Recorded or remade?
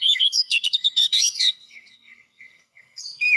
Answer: remade